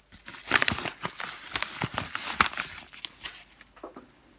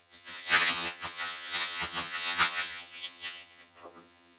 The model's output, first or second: second